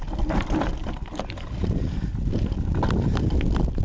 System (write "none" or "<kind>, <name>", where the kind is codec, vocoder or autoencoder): none